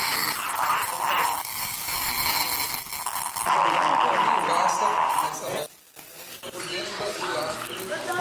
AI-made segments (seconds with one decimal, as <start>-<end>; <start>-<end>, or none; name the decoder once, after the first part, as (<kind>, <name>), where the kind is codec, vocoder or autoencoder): 1.4-2.1 (codec, DAC); 6.7-7.7